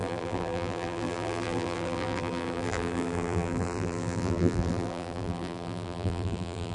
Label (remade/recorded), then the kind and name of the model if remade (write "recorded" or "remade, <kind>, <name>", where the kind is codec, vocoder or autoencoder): remade, vocoder, BigVGAN v2